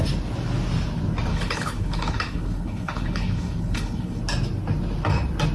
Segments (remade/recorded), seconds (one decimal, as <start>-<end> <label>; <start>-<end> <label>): 0.0-1.3 recorded; 1.3-4.2 remade; 4.2-5.5 recorded